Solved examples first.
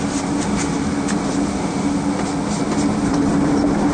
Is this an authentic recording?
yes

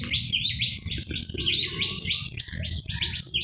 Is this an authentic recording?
yes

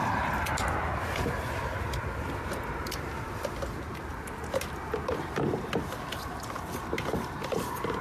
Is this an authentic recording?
no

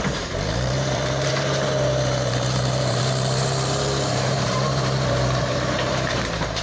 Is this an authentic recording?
no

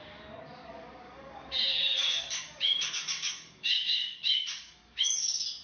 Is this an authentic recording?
no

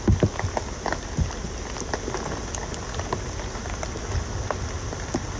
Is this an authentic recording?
yes